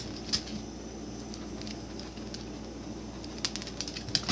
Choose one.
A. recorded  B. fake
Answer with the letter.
A